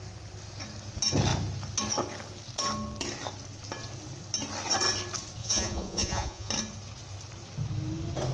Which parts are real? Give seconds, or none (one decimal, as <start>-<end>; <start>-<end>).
0.0-5.4; 6.5-8.3